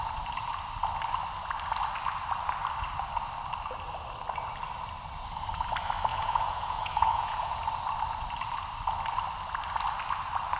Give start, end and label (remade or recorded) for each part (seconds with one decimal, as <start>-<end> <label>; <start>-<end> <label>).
0.0-6.1 recorded; 6.1-7.6 remade; 7.6-10.6 recorded